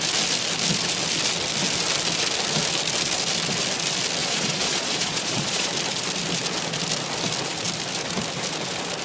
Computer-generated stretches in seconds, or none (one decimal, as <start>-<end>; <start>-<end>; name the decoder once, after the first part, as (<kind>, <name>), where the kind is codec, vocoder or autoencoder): 4.2-5.7 (vocoder, Vocos)